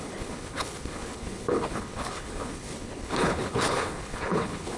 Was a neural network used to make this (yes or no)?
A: yes